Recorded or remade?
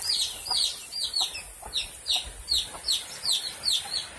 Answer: recorded